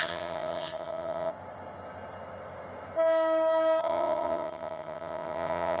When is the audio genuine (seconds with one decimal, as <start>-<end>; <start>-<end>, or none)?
1.3-3.8